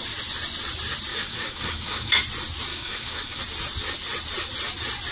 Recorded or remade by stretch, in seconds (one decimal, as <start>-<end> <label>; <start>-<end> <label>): 0.0-1.1 recorded; 1.1-2.2 remade; 2.2-2.7 recorded; 2.7-3.4 remade; 3.4-5.1 recorded